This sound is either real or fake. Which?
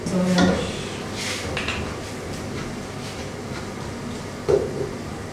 real